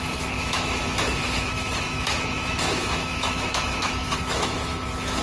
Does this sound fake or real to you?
fake